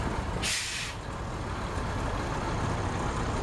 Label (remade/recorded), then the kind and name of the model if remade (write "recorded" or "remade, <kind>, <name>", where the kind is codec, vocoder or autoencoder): recorded